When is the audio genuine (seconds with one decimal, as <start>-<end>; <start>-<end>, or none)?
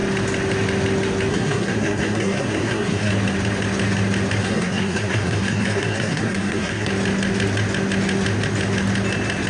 0.0-1.3; 3.1-4.4; 6.9-9.5